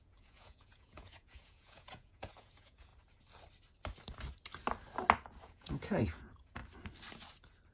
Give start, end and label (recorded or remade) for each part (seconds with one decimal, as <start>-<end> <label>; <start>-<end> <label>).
0.0-2.9 remade; 2.9-5.4 recorded; 5.4-6.6 remade; 6.6-7.7 recorded